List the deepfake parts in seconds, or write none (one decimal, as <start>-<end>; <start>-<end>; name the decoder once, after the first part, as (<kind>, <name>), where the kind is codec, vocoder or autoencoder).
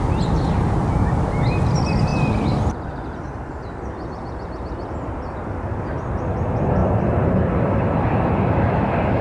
none